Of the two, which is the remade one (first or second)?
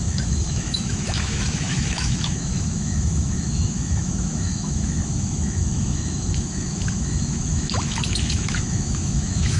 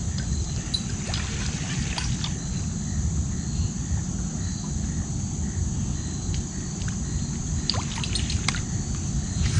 first